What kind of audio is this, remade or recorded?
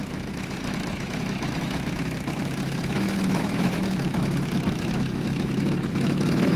remade